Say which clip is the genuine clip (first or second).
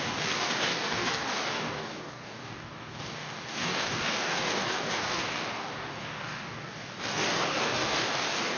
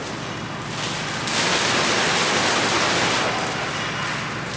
second